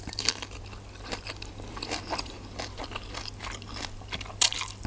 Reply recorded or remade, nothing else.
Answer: recorded